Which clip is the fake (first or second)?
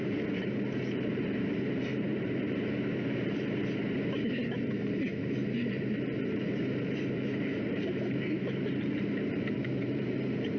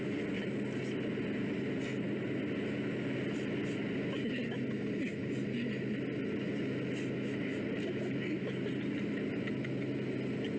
first